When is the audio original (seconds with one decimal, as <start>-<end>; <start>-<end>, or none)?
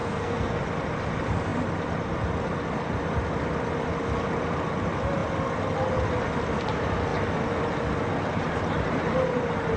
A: 0.6-9.8